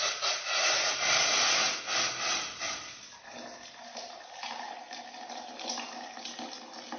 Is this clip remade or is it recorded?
recorded